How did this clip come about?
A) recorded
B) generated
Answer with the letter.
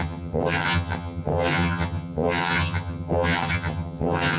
B